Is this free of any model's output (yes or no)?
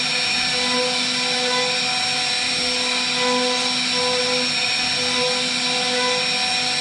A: yes